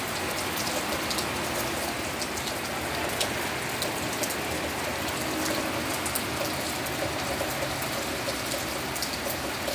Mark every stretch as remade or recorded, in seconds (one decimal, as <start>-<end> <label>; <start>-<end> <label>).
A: 0.0-9.7 recorded